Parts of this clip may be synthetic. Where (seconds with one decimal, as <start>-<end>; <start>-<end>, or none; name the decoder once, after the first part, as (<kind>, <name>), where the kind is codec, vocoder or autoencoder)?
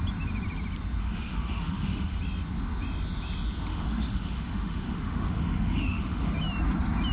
1.0-2.2 (autoencoder, DAC-VAE); 3.7-6.3